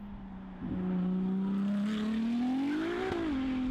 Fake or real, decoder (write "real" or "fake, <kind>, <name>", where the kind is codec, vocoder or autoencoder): real